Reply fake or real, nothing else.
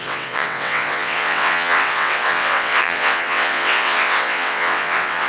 fake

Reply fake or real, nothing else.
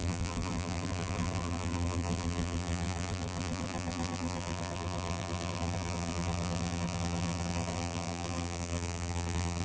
fake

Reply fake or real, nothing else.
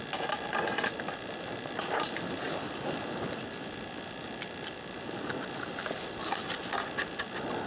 real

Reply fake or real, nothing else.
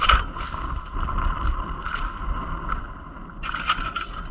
real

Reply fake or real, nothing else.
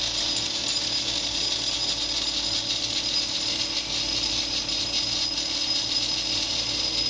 real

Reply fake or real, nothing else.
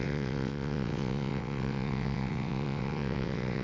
fake